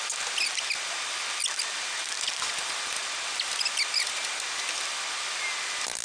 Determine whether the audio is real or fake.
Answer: real